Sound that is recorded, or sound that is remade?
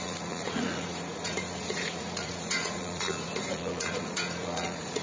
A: remade